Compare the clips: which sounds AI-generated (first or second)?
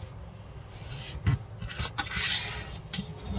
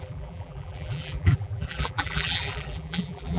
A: second